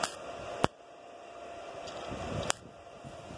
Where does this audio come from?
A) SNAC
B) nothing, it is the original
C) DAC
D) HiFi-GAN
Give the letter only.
B